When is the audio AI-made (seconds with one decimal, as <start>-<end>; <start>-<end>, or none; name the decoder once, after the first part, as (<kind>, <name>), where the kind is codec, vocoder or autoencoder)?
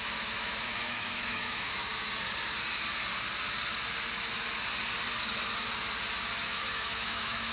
0.0-1.9 (autoencoder, DAC-VAE); 6.4-7.5